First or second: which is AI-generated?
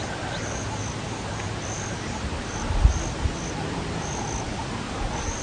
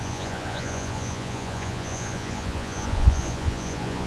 second